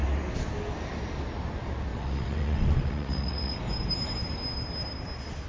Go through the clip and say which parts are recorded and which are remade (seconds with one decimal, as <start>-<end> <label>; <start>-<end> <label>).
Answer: 0.0-1.9 recorded; 1.9-3.6 remade; 3.6-5.5 recorded

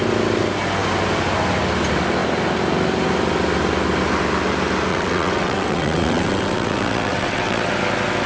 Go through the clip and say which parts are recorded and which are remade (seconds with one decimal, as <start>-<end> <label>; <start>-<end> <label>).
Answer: 0.0-4.9 recorded; 4.9-7.7 remade; 7.7-8.3 recorded